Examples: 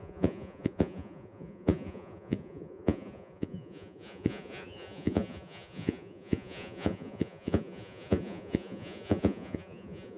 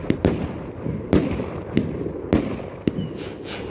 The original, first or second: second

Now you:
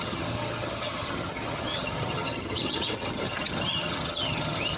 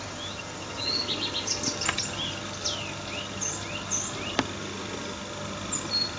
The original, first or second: second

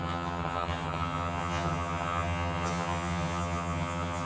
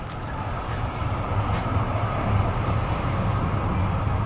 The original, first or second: second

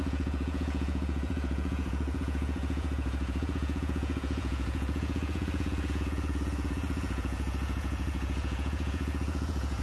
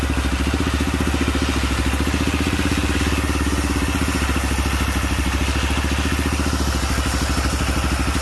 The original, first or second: second